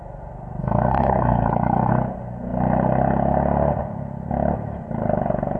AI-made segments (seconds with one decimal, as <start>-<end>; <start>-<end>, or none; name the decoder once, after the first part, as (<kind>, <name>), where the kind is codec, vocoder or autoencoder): 0.6-1.9 (codec, SNAC)